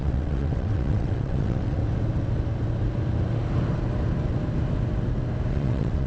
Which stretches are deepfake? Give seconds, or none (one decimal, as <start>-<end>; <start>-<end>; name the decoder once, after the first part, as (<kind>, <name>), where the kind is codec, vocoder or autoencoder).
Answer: 0.0-1.8 (vocoder, WaveNeXt); 5.5-6.1